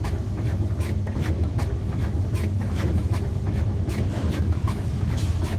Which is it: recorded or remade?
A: remade